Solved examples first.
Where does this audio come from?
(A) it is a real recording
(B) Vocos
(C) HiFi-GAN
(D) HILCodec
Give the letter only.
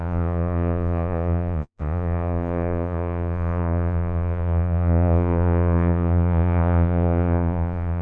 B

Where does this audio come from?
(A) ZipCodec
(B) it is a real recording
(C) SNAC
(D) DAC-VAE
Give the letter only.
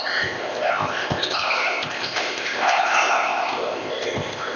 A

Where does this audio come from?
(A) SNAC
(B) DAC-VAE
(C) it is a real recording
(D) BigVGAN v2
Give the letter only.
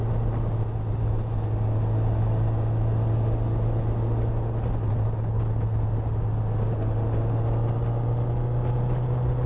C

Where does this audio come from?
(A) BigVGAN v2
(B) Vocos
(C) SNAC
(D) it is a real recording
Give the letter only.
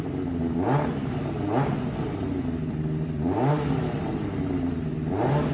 D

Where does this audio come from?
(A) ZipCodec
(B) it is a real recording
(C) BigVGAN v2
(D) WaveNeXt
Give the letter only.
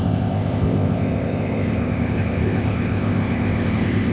A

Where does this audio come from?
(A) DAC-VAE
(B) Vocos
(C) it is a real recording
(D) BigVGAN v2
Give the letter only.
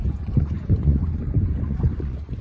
B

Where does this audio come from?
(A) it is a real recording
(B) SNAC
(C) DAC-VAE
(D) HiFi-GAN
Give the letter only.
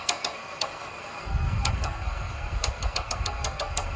B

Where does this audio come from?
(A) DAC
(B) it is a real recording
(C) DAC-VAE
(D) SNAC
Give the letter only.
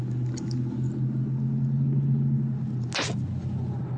B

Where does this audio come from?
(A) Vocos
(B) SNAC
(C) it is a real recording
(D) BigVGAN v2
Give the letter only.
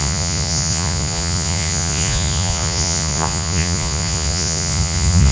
A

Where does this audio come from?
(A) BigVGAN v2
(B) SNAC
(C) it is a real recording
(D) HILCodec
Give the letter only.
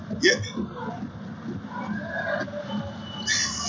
C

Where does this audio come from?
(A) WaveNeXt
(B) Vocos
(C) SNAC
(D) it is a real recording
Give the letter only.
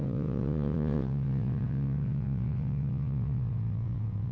A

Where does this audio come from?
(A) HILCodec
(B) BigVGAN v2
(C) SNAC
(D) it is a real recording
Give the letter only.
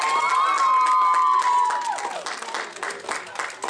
D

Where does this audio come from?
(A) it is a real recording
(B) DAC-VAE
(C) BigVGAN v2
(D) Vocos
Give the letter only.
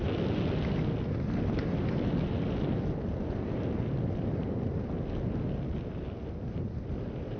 A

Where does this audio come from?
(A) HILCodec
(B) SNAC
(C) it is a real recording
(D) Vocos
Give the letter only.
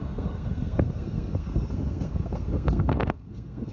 B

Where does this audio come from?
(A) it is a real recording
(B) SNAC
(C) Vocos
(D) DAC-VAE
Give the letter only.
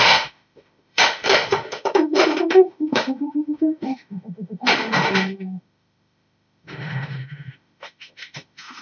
D